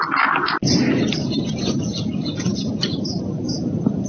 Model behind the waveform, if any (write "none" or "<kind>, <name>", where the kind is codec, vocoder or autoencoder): none